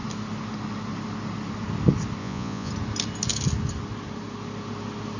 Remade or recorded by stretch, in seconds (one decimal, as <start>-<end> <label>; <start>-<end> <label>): 0.0-2.2 recorded; 2.2-2.7 remade; 2.7-5.2 recorded